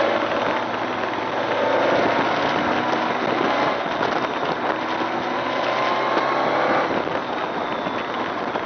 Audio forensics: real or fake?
real